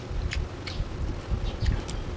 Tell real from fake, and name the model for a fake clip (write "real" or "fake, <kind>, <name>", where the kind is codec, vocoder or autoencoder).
fake, vocoder, BigVGAN v2